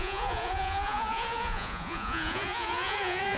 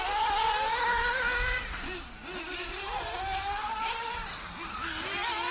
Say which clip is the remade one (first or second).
first